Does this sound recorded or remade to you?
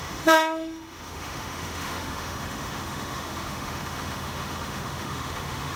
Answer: remade